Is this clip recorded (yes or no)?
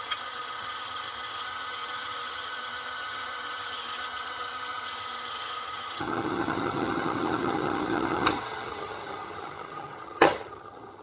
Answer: no